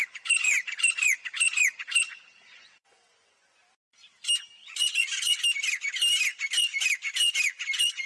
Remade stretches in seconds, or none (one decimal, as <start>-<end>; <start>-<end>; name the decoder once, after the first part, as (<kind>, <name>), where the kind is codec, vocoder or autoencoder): 0.0-3.6 (vocoder, Vocos); 4.6-5.4